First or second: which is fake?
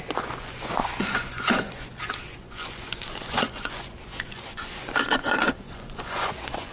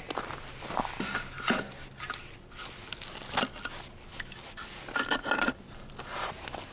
first